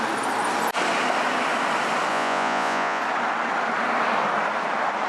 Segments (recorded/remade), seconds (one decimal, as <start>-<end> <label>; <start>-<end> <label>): 0.0-2.1 recorded; 2.1-3.0 remade; 3.0-5.1 recorded